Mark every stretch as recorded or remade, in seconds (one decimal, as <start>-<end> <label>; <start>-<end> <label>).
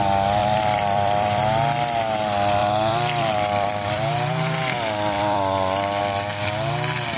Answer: 0.0-0.4 recorded; 0.4-1.4 remade; 1.4-2.6 recorded; 2.6-6.0 remade; 6.0-7.2 recorded